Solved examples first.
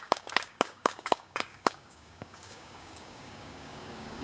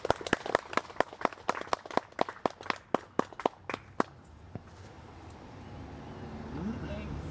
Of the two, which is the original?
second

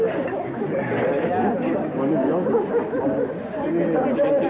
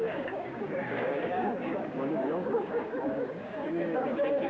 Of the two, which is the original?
first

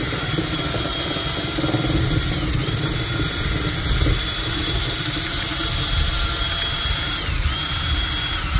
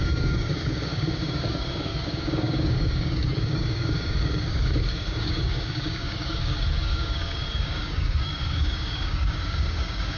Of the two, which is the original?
first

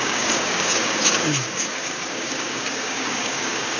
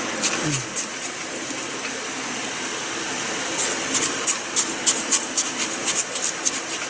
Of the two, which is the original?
second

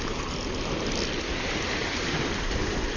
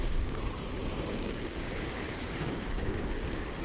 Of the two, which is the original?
first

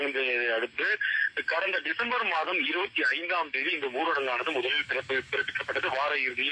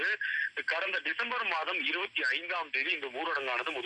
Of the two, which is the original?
second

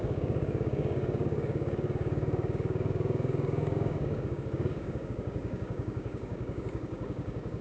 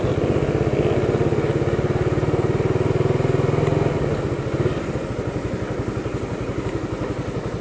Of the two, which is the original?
second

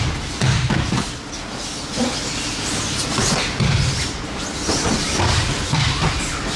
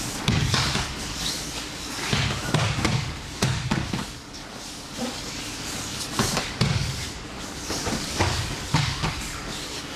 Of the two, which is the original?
first